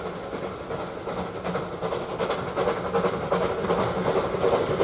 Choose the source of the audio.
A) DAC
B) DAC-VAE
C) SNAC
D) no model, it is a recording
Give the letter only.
D